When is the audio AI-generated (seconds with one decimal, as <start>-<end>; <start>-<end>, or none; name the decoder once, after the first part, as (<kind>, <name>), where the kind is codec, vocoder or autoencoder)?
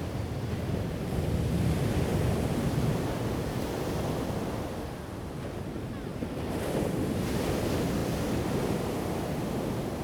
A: 6.1-7.6 (vocoder, BigVGAN v2)